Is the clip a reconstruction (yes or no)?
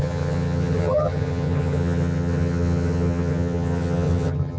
yes